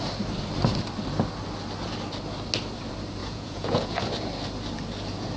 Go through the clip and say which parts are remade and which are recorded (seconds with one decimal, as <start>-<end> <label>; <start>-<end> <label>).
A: 0.0-3.2 recorded; 3.2-4.0 remade; 4.0-5.4 recorded